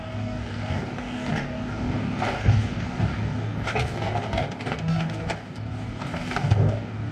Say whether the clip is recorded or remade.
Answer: remade